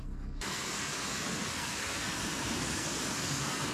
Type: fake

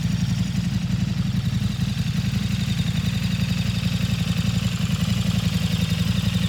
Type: real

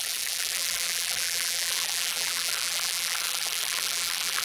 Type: fake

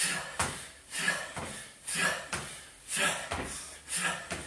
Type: real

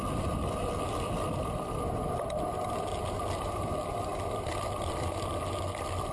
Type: real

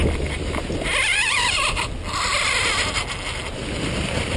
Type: real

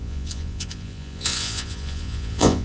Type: fake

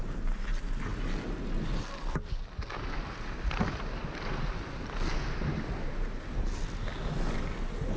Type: real